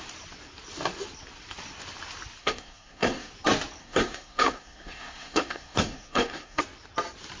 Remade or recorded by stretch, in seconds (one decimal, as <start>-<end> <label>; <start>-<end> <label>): 0.0-2.4 recorded; 2.4-3.3 remade; 3.3-3.8 recorded; 3.8-6.6 remade; 6.6-7.4 recorded